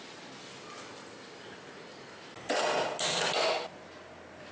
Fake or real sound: real